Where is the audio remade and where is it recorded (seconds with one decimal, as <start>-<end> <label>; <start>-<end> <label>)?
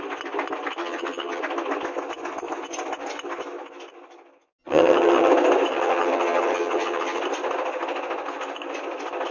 0.0-0.8 recorded; 0.8-1.4 remade; 1.4-4.6 recorded; 4.6-5.3 remade; 5.3-5.7 recorded; 5.7-7.2 remade; 7.2-9.3 recorded